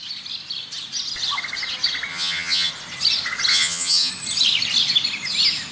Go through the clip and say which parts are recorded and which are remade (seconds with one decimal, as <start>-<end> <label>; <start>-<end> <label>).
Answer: 0.0-2.1 recorded; 2.1-2.7 remade; 2.7-3.5 recorded; 3.5-4.1 remade; 4.1-5.7 recorded